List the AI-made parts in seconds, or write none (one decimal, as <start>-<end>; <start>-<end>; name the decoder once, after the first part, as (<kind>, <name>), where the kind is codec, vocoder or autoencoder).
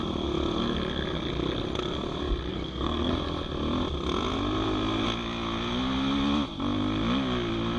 2.5-3.1 (codec, SNAC)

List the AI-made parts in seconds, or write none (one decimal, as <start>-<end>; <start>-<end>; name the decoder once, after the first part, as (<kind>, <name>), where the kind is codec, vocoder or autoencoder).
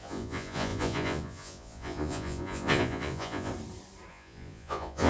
0.0-3.5 (vocoder, Vocos); 4.1-5.1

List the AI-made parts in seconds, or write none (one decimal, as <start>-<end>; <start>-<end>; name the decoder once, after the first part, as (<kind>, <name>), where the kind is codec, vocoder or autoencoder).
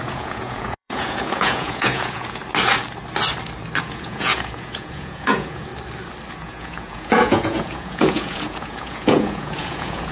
0.0-2.4 (vocoder, Vocos); 3.8-5.7; 6.4-10.1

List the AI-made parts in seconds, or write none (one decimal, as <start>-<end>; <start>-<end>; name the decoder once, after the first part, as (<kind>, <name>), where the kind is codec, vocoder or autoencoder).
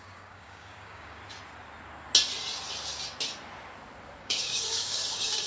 0.0-1.2 (codec, DAC); 4.2-5.5